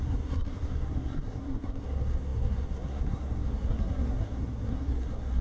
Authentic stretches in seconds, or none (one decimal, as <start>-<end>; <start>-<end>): none